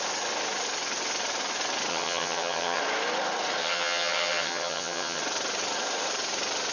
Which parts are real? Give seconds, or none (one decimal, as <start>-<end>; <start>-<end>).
0.0-1.9; 2.8-3.6; 5.2-6.7